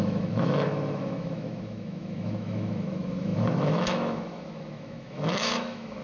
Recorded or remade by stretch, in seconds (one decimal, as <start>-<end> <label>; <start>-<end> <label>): 0.0-6.0 remade